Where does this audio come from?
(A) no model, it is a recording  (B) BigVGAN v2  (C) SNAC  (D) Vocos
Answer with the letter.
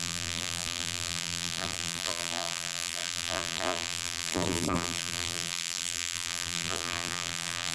B